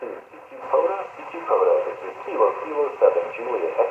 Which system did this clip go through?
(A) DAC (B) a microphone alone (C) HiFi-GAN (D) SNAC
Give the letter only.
B